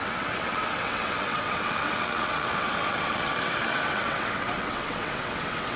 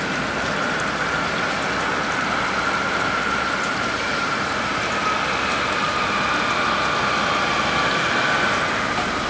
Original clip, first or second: second